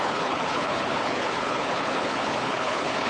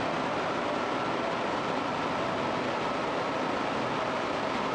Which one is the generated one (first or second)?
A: first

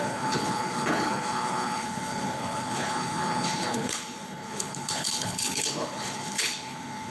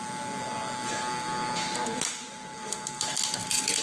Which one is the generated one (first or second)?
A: first